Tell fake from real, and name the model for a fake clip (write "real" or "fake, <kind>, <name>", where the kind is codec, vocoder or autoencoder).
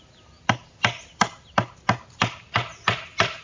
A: real